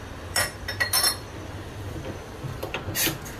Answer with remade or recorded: recorded